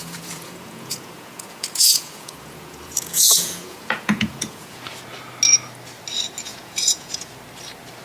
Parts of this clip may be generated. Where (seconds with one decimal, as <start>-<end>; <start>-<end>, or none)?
0.0-4.8; 6.5-7.3